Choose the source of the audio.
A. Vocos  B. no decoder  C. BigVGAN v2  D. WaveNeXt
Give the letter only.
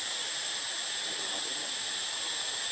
B